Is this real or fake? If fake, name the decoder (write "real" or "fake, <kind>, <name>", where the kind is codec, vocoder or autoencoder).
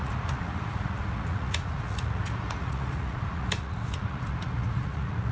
fake, vocoder, Vocos